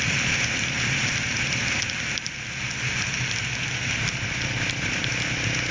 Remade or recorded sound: recorded